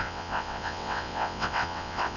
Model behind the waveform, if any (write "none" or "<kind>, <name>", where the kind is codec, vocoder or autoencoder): vocoder, WaveNeXt